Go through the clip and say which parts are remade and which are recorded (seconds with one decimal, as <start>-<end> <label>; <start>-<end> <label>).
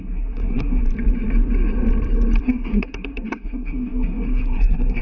0.0-0.8 remade; 0.8-2.4 recorded; 2.4-5.0 remade